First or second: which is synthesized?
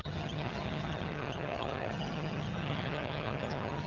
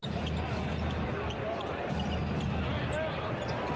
first